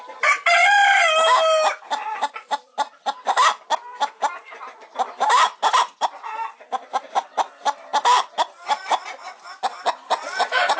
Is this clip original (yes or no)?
yes